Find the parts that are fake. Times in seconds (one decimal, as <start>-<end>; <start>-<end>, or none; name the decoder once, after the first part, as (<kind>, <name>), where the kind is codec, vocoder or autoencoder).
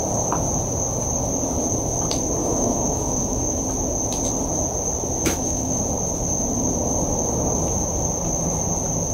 2.4-3.6 (autoencoder, DAC-VAE); 5.2-5.8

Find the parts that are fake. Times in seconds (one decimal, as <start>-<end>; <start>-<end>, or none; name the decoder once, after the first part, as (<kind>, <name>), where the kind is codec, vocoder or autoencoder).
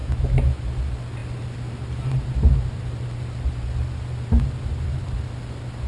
0.0-0.6 (autoencoder, DAC-VAE)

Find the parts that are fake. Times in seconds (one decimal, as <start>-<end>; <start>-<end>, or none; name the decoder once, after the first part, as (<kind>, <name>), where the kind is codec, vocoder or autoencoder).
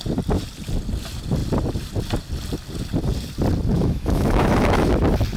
3.7-4.9 (autoencoder, DAC-VAE)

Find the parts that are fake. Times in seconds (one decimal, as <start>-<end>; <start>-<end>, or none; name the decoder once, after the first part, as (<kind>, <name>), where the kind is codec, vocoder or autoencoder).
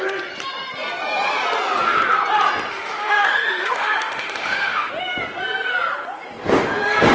2.7-4.9 (autoencoder, DAC-VAE)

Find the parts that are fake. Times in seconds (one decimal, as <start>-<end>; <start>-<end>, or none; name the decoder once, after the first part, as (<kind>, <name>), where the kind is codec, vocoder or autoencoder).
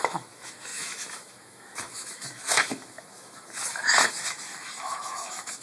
0.0-5.6 (autoencoder, DAC-VAE)